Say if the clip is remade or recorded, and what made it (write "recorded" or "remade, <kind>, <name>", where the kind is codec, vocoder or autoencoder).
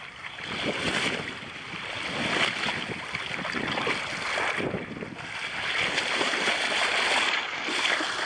recorded